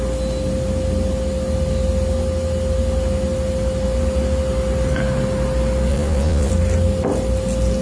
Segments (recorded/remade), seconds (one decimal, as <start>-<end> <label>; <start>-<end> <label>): 0.0-5.9 recorded; 5.9-6.5 remade; 6.5-7.8 recorded